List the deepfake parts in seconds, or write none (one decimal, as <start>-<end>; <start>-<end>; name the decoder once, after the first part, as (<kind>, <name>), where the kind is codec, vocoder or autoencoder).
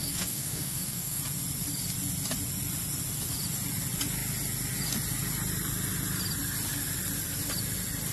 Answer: 0.0-1.2 (codec, DAC)